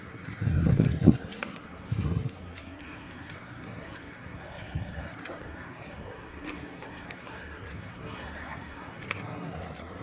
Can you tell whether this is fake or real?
fake